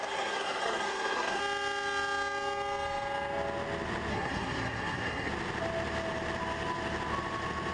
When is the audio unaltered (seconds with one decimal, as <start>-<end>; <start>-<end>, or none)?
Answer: 1.4-4.1; 5.3-7.7